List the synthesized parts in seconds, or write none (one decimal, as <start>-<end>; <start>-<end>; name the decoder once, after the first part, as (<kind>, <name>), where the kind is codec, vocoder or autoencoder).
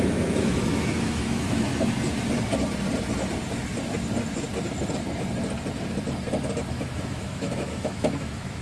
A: 0.0-1.7 (autoencoder, DAC-VAE); 6.7-8.6